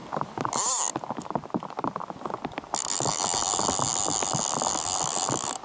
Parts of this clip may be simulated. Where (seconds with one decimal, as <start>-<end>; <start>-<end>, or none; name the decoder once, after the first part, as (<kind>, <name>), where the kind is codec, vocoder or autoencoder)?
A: none